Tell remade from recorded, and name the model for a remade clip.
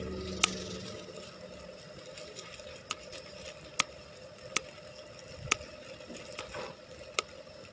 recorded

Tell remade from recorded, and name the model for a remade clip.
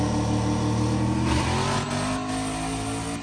recorded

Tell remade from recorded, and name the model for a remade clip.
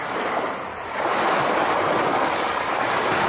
recorded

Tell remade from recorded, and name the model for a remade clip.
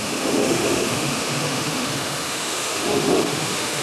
remade, autoencoder, DAC-VAE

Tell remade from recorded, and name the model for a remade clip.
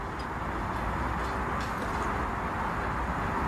recorded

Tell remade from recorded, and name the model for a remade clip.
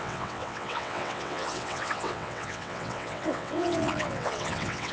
remade, vocoder, WaveNeXt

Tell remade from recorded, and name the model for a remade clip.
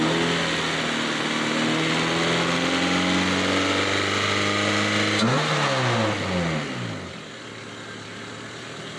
recorded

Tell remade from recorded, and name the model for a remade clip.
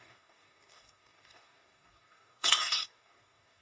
remade, codec, DAC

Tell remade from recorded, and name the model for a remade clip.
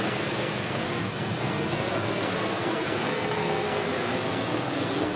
remade, codec, SNAC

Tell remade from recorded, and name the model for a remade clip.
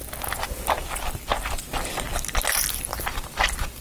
recorded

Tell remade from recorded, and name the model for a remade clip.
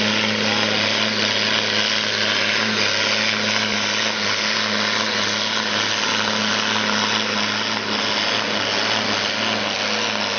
recorded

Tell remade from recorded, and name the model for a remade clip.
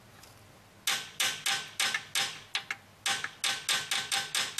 recorded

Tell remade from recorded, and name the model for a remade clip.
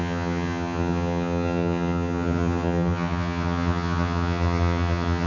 remade, vocoder, HiFi-GAN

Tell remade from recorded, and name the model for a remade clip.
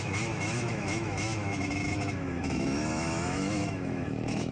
remade, autoencoder, DAC-VAE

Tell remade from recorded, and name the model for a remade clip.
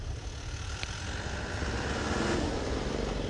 recorded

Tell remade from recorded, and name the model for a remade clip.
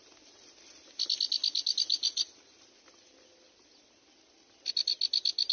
recorded